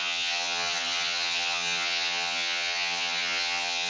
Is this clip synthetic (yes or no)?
yes